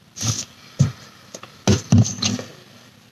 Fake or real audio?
real